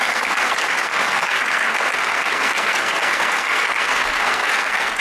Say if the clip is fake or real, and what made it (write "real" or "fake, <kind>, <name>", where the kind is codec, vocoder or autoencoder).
fake, codec, SNAC